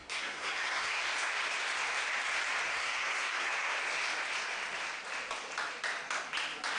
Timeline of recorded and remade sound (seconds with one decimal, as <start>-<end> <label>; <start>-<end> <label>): 0.0-1.0 remade; 1.0-2.7 recorded; 2.7-3.8 remade; 3.8-6.8 recorded